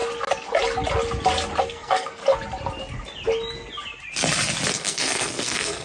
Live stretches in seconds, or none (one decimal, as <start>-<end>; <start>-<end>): 0.0-1.6; 2.2-4.7